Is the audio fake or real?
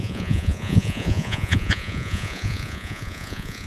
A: fake